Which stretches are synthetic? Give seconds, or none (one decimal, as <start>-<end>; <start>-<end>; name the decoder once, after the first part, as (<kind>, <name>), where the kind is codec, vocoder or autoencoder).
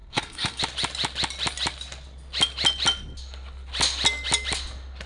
0.0-0.6 (codec, SNAC)